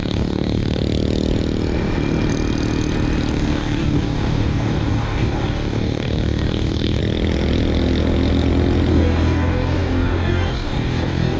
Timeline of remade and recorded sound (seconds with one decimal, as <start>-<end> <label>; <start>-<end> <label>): 0.0-0.8 remade; 0.8-3.3 recorded; 3.3-7.0 remade; 7.0-8.9 recorded; 8.9-11.4 remade

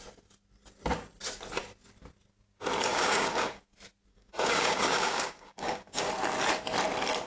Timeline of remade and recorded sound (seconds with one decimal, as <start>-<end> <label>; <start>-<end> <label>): 0.0-2.9 recorded; 2.9-3.6 remade; 3.6-4.1 recorded; 4.1-6.1 remade; 6.1-7.3 recorded

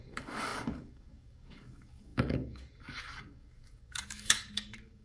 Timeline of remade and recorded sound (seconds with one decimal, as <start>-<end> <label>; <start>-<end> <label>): 0.0-5.0 remade

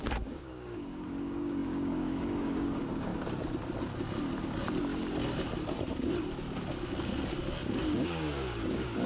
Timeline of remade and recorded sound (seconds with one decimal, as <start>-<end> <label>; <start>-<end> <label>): 0.0-3.1 remade; 3.1-7.7 recorded; 7.7-9.1 remade

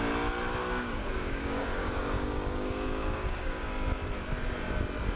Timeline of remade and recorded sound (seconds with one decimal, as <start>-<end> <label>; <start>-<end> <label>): 0.0-0.6 recorded; 0.6-3.7 remade; 3.7-5.2 recorded

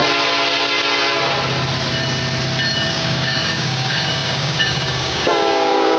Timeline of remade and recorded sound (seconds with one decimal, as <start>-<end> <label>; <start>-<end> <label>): 0.0-2.9 recorded; 2.9-6.0 remade

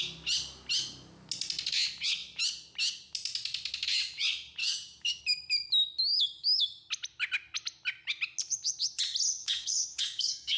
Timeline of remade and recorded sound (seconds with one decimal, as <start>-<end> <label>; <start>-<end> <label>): 0.0-4.6 recorded; 4.6-5.2 remade; 5.2-6.1 recorded; 6.1-6.9 remade; 6.9-9.4 recorded; 9.4-10.6 remade